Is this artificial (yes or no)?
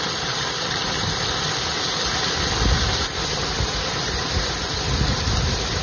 no